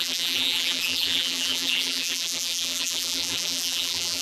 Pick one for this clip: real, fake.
fake